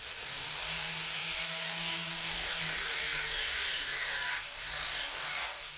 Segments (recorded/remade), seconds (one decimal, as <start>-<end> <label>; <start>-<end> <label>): 0.0-5.8 remade